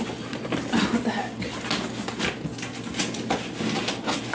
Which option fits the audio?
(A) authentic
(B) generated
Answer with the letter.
A